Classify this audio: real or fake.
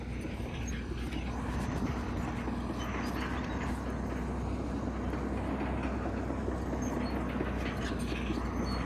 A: real